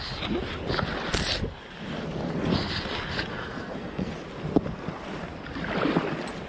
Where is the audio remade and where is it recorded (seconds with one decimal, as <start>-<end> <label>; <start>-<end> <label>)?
0.0-3.3 recorded; 3.3-4.1 remade; 4.1-6.5 recorded